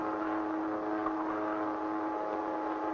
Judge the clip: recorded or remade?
recorded